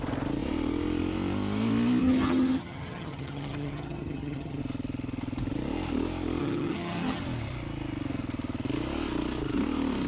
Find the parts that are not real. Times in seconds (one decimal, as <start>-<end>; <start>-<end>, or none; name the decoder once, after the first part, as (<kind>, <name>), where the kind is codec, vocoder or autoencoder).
2.0-4.6 (vocoder, HiFi-GAN); 6.4-7.2